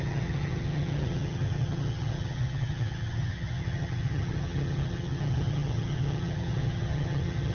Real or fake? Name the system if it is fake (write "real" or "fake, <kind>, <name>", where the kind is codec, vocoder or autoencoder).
fake, vocoder, HiFi-GAN